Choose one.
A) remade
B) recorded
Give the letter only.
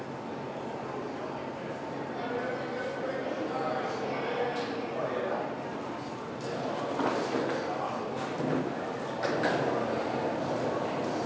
B